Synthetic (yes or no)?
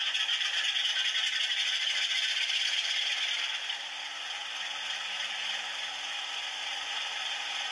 no